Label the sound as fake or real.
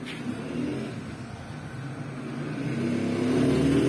real